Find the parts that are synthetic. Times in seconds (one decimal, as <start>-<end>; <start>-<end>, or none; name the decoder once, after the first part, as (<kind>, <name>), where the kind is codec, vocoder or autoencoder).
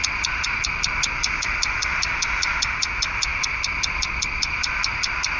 none